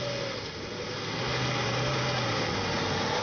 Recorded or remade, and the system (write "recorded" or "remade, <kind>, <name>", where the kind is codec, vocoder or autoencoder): recorded